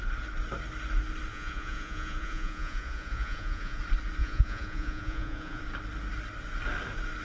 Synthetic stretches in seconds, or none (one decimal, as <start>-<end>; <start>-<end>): 1.3-3.8; 4.2-5.6

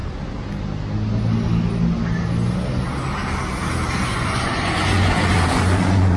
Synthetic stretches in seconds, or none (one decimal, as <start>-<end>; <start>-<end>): 4.1-6.2

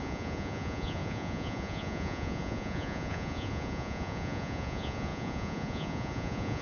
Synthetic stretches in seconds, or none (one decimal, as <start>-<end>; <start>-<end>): 0.0-6.6

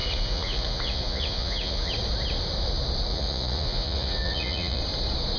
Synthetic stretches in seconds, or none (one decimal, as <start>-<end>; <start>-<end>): 0.0-1.9; 3.1-4.8